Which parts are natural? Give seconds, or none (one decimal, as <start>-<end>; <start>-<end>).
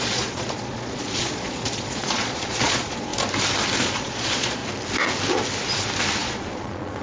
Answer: 3.1-3.8; 4.6-6.2